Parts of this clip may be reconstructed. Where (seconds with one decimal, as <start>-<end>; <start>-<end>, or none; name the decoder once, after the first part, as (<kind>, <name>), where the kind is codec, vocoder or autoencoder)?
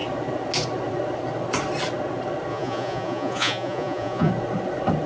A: 2.5-4.3 (vocoder, Vocos)